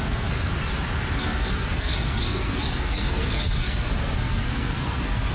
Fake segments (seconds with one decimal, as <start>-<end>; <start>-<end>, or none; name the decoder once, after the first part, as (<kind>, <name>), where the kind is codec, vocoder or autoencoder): 0.0-0.5 (codec, SNAC); 1.2-5.3